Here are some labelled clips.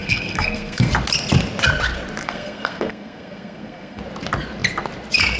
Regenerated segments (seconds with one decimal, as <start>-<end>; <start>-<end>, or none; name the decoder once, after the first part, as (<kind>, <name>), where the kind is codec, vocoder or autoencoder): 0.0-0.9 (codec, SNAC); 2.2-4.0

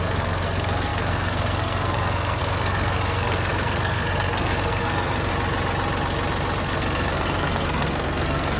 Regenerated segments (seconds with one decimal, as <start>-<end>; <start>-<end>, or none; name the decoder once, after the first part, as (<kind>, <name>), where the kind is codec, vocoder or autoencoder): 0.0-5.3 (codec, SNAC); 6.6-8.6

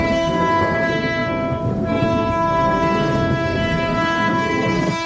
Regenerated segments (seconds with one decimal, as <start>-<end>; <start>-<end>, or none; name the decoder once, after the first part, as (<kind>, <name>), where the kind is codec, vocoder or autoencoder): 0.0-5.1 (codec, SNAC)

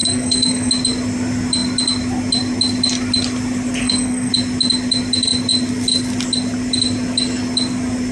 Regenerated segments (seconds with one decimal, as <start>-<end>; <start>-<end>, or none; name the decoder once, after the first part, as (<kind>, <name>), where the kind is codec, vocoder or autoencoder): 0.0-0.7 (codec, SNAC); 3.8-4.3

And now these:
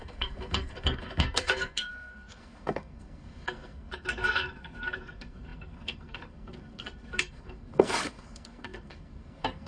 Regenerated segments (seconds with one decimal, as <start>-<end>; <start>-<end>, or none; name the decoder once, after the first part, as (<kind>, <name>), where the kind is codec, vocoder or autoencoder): 0.0-9.7 (codec, SNAC)

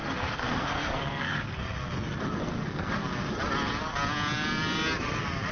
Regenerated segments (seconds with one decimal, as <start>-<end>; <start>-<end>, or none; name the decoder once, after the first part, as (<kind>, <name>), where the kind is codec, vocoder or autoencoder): 0.0-1.6 (codec, SNAC); 2.4-3.0

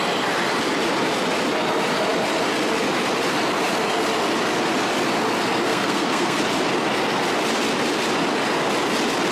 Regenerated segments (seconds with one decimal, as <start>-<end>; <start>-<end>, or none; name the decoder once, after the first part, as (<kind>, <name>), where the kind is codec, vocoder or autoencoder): 5.7-6.4 (codec, SNAC)

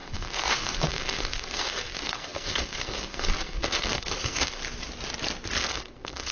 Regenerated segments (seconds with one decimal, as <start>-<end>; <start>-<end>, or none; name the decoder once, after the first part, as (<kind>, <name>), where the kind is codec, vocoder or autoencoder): 0.0-4.6 (codec, SNAC); 5.6-6.3